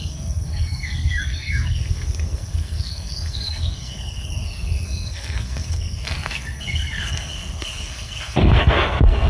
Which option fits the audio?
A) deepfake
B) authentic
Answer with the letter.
A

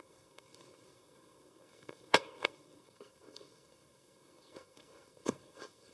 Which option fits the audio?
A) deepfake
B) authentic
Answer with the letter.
A